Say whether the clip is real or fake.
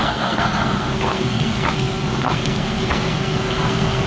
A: fake